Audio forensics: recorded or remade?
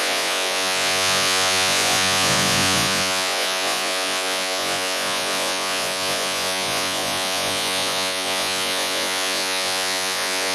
remade